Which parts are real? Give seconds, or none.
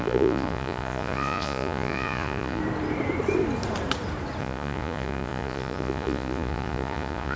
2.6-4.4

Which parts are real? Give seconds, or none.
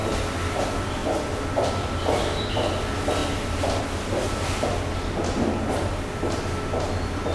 0.0-7.3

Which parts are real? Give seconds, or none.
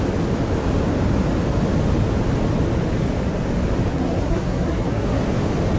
0.0-3.9; 5.2-5.8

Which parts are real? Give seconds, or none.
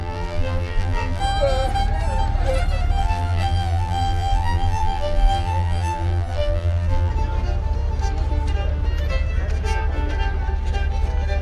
1.2-3.0; 7.1-11.4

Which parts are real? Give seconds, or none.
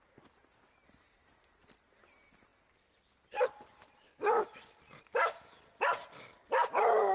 0.0-7.1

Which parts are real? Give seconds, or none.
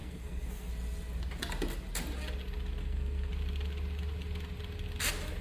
0.7-2.8; 3.3-5.4